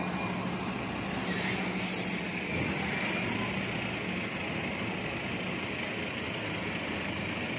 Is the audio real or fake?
real